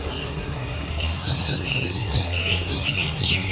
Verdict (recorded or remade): remade